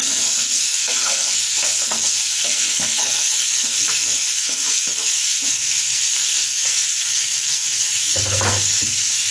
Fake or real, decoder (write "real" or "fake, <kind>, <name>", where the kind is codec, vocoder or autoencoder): fake, codec, SNAC